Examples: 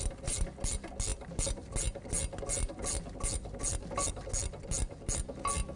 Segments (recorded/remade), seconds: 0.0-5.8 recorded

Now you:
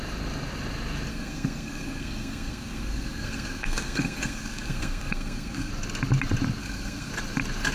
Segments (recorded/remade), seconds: 0.0-1.1 recorded; 1.1-5.7 remade; 5.7-6.6 recorded; 6.6-7.1 remade; 7.1-7.7 recorded

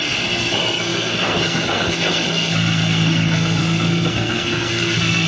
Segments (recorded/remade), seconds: 0.0-5.3 remade

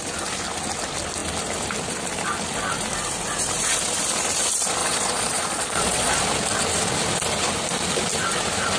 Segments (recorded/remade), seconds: 0.0-4.8 recorded; 4.8-6.1 remade; 6.1-8.8 recorded